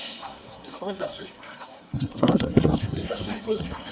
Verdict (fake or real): fake